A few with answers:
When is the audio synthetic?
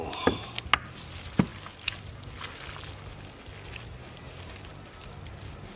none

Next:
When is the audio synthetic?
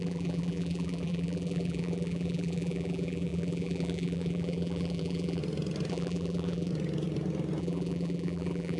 0.0-5.4 (vocoder, BigVGAN v2); 5.9-6.7; 7.6-8.8